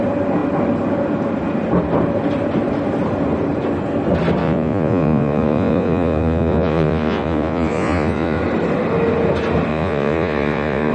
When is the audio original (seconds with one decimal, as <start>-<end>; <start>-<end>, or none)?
0.0-4.4; 8.4-9.7